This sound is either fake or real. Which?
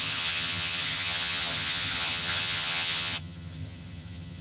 fake